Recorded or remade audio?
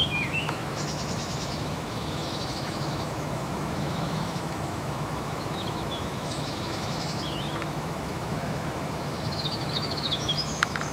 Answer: remade